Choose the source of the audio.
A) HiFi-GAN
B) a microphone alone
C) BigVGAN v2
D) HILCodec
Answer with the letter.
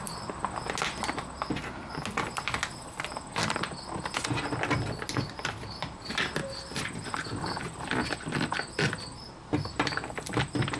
B